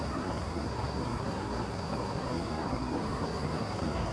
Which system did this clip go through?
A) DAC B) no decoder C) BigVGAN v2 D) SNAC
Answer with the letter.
D